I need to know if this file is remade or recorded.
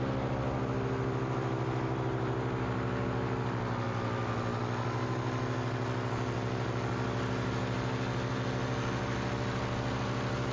recorded